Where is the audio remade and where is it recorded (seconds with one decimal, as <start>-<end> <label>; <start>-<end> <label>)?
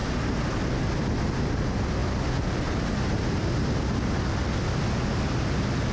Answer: 0.0-5.9 recorded